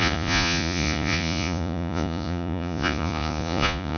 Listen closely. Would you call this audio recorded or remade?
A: remade